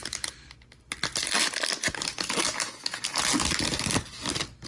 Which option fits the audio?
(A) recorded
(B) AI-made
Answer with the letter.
A